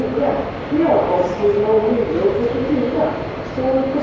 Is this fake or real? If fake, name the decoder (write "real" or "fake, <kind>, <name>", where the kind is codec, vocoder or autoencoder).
real